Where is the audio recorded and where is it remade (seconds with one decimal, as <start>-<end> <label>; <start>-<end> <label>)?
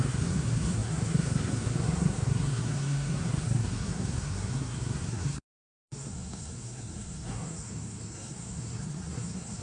0.0-9.6 remade